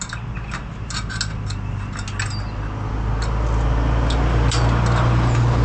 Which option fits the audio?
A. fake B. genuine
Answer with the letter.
B